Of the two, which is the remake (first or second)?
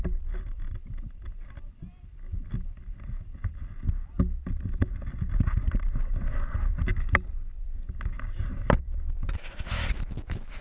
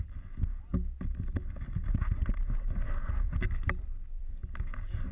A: first